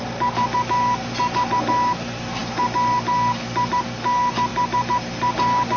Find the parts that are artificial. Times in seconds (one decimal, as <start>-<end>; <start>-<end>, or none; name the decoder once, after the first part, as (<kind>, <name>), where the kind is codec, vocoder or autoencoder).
none